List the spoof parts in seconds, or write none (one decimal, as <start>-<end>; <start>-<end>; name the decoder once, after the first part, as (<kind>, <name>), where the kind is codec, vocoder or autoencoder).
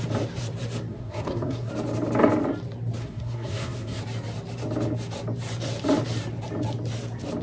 0.9-1.7 (codec, SNAC); 3.0-4.0